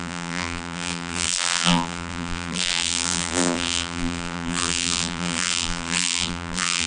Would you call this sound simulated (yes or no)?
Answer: yes